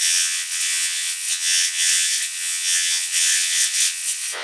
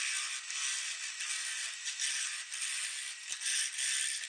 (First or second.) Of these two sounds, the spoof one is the first